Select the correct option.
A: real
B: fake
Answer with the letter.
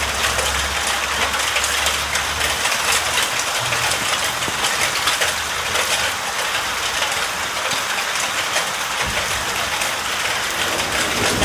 A